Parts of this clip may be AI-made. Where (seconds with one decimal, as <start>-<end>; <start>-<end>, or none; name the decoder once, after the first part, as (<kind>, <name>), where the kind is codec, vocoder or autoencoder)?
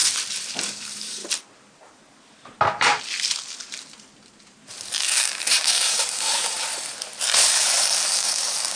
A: 0.6-1.2 (codec, DAC); 5.0-6.7; 7.5-8.8